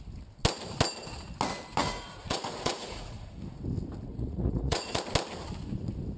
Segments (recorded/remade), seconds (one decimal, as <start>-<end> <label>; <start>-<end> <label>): 0.0-1.8 recorded; 1.8-3.4 remade; 3.4-4.1 recorded; 4.1-5.0 remade; 5.0-6.2 recorded